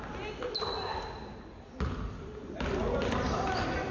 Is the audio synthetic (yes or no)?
no